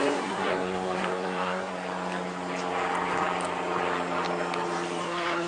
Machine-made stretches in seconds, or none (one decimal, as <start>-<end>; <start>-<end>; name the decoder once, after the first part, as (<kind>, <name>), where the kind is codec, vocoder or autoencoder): 0.0-1.7 (codec, SNAC); 5.0-5.5